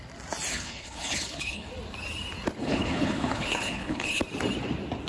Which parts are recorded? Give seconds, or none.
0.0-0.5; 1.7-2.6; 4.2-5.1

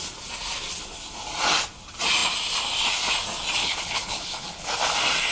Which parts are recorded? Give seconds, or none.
0.0-3.6; 4.7-5.3

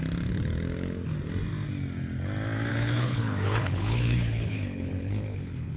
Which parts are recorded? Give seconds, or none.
0.0-2.7

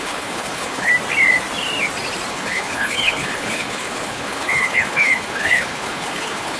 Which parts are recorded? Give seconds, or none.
0.9-2.3

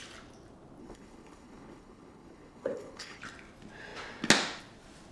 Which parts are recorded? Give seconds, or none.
0.0-0.8; 3.2-5.1

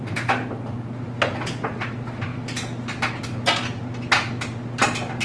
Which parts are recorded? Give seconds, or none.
0.0-5.2

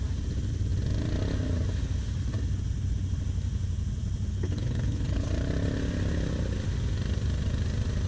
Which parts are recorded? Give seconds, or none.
0.0-4.3; 5.3-8.1